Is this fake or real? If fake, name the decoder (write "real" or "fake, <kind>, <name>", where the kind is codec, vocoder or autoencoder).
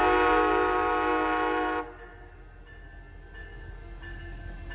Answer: real